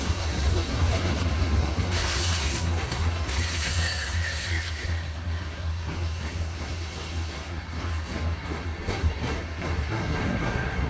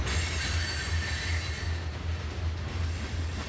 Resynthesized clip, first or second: first